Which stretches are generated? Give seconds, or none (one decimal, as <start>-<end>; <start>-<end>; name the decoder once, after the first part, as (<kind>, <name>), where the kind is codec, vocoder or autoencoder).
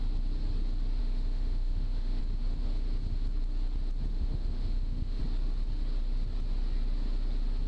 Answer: 1.0-2.2 (autoencoder, DAC-VAE); 4.1-5.2